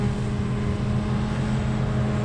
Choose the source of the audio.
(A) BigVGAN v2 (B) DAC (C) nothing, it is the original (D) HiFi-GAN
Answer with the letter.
C